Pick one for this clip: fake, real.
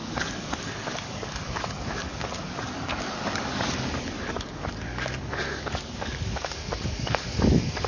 fake